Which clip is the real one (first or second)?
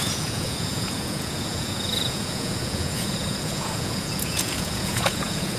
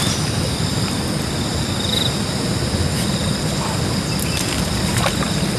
second